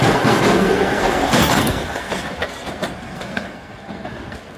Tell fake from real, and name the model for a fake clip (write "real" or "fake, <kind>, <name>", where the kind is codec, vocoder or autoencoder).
fake, codec, SNAC